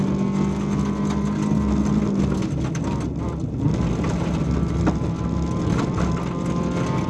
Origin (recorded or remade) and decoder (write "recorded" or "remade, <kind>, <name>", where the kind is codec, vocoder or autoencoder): recorded